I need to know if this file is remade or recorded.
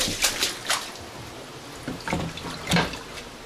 recorded